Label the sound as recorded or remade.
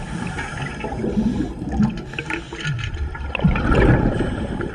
recorded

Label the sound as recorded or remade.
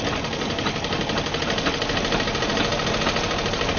recorded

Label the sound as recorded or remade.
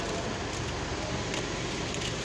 recorded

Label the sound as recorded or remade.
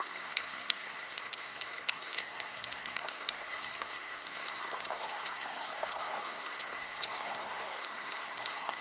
remade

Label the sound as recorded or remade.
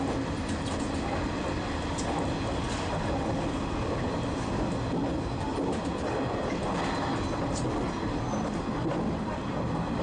recorded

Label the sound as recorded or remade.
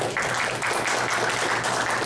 recorded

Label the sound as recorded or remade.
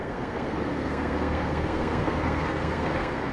remade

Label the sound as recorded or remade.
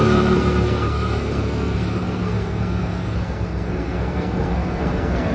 remade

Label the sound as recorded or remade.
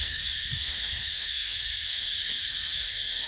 remade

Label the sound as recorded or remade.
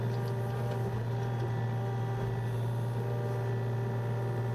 recorded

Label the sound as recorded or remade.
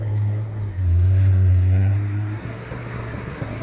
remade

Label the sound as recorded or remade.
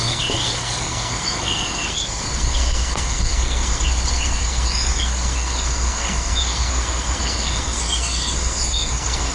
remade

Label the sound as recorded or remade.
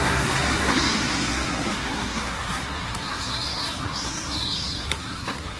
remade